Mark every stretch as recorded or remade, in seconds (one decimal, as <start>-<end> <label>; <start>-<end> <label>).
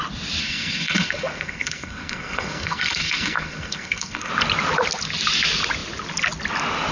0.0-0.4 recorded; 0.4-4.3 remade; 4.3-6.9 recorded